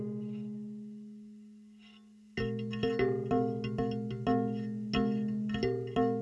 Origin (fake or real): real